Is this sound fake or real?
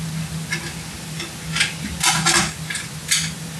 real